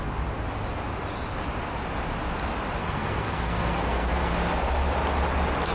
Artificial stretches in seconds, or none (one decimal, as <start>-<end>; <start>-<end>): 2.8-4.3